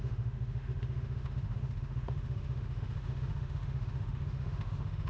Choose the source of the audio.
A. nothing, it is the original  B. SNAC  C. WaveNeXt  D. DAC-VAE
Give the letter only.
D